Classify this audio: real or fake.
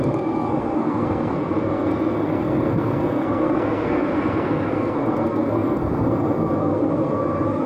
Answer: fake